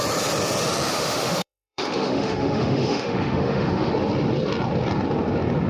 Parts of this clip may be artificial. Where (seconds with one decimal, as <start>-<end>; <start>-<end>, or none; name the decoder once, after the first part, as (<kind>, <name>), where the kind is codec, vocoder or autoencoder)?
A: 0.9-3.9 (autoencoder, DAC-VAE)